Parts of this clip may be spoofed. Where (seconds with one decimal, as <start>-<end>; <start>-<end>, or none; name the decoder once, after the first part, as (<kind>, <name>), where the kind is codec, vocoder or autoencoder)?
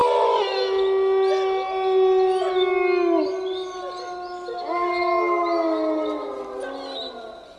none